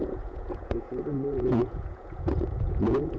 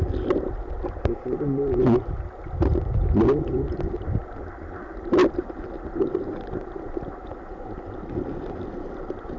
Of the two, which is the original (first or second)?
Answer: second